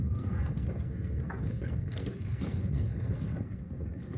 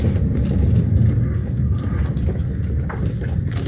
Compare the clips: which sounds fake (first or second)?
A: first